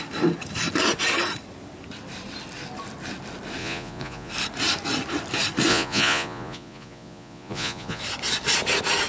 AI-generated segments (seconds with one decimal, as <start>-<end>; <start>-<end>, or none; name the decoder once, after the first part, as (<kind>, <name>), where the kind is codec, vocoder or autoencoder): 3.6-4.3 (vocoder, Vocos); 5.7-8.0